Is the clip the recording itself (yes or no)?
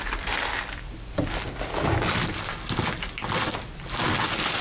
yes